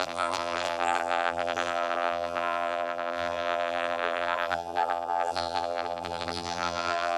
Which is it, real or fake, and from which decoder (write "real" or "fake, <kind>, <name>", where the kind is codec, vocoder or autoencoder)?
fake, vocoder, BigVGAN v2